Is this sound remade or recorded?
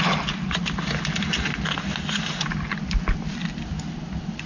recorded